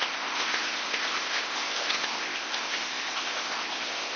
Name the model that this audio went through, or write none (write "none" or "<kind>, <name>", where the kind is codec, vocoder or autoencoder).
codec, ZipCodec